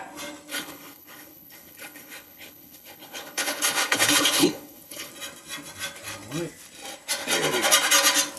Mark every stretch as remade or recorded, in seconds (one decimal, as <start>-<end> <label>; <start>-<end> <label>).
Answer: 0.0-0.5 recorded; 0.5-5.1 remade; 5.1-8.4 recorded

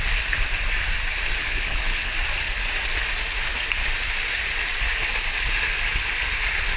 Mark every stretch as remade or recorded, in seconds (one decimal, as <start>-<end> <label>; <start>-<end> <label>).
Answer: 0.0-1.4 recorded; 1.4-2.1 remade; 2.1-6.8 recorded

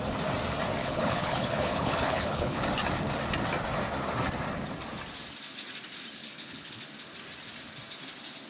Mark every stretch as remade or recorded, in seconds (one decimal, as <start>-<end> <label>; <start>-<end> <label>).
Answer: 0.0-0.8 recorded; 0.8-2.6 remade; 2.6-6.2 recorded; 6.2-6.8 remade; 6.8-8.5 recorded

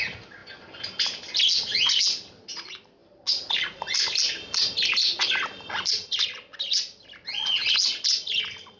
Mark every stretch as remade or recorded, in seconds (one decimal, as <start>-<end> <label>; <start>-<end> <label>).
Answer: 0.0-8.8 recorded